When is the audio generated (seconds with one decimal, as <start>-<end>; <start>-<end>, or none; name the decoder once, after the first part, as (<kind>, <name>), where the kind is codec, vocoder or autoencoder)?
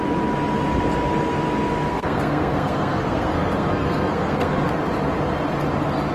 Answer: 1.9-4.6 (codec, SNAC)